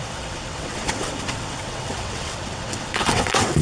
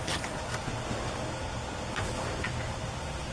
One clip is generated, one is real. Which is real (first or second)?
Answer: second